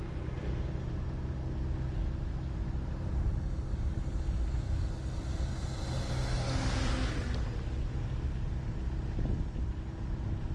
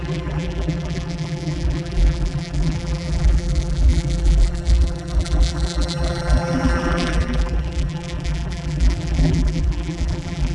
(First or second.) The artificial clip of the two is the second